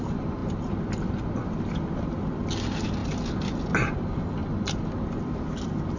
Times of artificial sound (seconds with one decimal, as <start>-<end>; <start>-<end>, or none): none